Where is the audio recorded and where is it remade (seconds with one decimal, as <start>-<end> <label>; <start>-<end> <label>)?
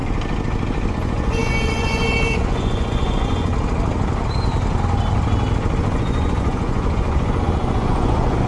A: 0.0-0.9 recorded; 0.9-3.5 remade; 3.5-5.8 recorded; 5.8-8.5 remade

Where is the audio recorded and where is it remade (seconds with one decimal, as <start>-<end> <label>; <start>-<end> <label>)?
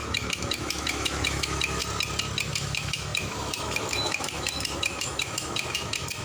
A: 0.0-1.8 remade; 1.8-2.5 recorded; 2.5-6.2 remade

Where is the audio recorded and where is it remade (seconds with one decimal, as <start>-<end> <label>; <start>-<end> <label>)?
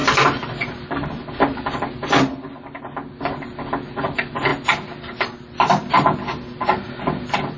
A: 0.0-7.6 recorded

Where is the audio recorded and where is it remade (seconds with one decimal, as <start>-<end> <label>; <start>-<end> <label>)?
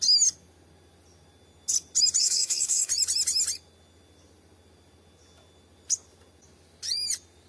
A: 0.0-2.2 recorded; 2.2-2.9 remade; 2.9-7.5 recorded